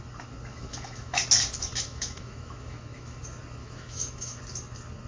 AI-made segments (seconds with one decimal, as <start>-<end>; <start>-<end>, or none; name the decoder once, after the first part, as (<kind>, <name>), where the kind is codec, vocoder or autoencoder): 0.5-1.2 (autoencoder, DAC-VAE); 1.6-3.2; 3.6-4.4